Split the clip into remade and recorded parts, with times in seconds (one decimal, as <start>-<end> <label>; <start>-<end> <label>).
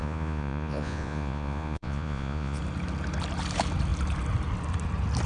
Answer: 0.0-2.6 remade; 2.6-5.3 recorded